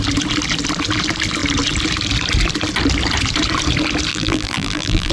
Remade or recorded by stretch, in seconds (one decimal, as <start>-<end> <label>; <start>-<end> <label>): 0.0-4.1 recorded; 4.1-5.1 remade